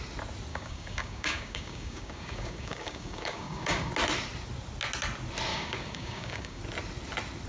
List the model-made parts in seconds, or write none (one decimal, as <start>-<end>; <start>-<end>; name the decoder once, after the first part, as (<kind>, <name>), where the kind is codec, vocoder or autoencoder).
0.5-3.9 (codec, DAC); 5.5-6.6